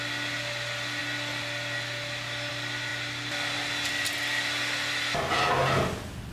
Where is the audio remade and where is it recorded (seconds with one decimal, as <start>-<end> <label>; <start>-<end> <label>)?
0.0-6.3 recorded